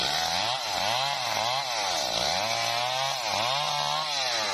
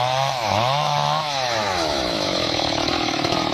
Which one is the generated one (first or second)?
second